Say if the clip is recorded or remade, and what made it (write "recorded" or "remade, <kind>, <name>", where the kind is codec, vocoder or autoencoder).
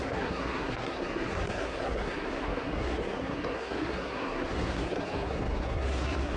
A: remade, codec, SNAC